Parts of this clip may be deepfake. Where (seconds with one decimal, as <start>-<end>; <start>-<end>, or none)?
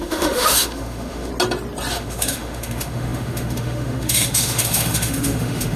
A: 0.0-1.3; 1.9-5.8